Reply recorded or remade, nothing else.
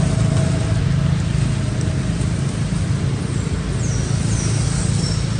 recorded